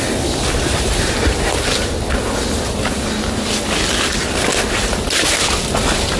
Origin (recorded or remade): recorded